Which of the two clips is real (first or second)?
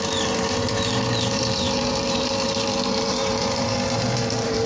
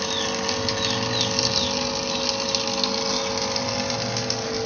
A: second